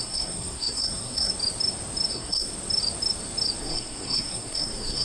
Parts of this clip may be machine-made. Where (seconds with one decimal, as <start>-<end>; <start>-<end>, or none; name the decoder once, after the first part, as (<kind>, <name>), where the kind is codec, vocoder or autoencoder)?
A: 0.0-1.3 (codec, SNAC); 2.1-2.5; 3.6-5.0